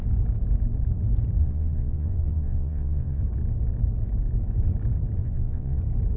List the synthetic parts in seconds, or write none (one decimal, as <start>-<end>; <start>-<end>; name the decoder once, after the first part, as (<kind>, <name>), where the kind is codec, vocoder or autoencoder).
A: 1.4-3.2 (vocoder, Vocos); 5.2-5.8